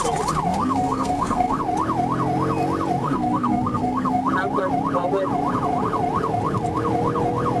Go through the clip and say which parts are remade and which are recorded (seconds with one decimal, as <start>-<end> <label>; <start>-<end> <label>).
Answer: 0.0-0.5 recorded; 0.5-1.6 remade; 1.6-3.0 recorded; 3.0-4.3 remade; 4.3-7.6 recorded